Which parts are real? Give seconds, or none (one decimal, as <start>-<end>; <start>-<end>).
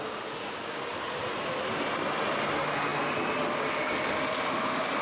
0.0-5.0